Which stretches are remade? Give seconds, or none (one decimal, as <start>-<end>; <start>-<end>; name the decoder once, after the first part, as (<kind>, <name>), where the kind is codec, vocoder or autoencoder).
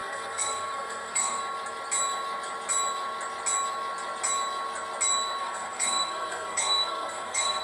0.0-1.4 (codec, SNAC); 5.4-7.6